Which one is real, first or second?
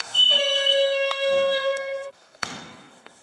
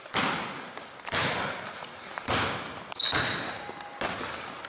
second